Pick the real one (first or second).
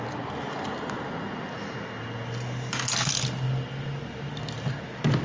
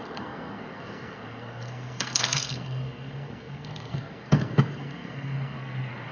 first